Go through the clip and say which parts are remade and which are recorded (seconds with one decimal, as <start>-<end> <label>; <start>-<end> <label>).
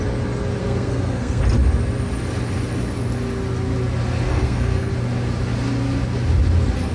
0.0-0.6 recorded; 0.6-1.4 remade; 1.4-4.3 recorded; 4.3-4.9 remade; 4.9-6.9 recorded